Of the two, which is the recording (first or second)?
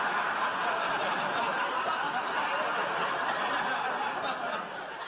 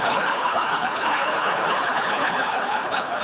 first